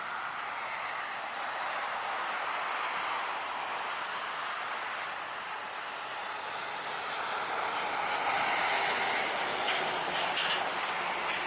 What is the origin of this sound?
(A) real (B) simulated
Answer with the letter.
A